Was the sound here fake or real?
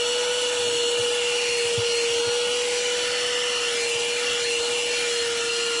real